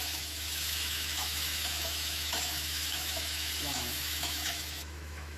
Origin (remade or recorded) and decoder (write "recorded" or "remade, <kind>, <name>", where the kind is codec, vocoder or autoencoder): remade, autoencoder, DAC-VAE